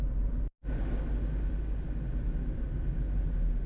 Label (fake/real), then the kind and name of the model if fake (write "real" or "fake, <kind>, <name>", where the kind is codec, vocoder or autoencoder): real